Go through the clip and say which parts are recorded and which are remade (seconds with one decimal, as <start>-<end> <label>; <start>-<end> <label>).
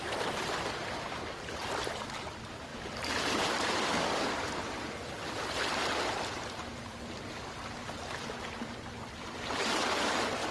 0.0-2.7 recorded; 2.7-3.6 remade; 3.6-10.5 recorded